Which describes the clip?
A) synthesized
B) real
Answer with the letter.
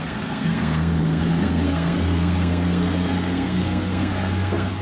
A